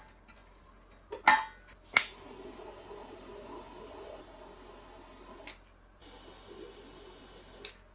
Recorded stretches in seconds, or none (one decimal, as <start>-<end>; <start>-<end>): 0.0-7.9